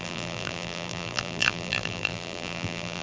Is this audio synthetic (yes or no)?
yes